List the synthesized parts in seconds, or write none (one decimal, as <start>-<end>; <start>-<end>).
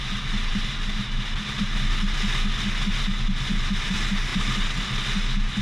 none